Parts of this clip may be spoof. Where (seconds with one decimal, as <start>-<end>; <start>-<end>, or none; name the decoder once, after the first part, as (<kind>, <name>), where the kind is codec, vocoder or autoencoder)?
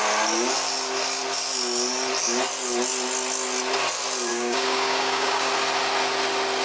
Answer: 4.3-5.5 (codec, DAC)